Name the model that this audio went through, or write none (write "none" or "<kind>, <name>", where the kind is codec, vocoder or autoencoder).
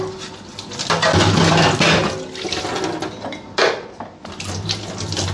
none